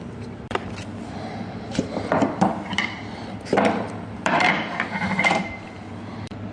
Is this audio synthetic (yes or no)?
yes